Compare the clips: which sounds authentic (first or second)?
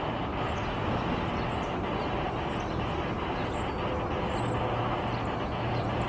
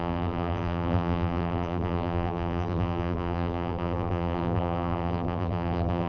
first